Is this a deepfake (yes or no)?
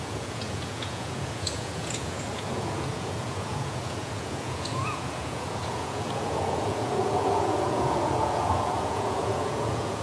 yes